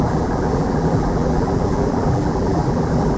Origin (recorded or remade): remade